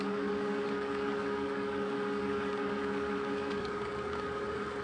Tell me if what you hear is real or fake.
fake